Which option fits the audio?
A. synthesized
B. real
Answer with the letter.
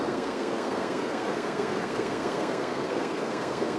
A